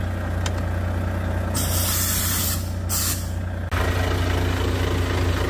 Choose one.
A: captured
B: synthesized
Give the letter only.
A